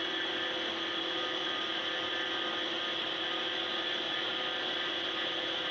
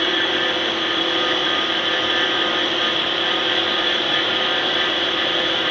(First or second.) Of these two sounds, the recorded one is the first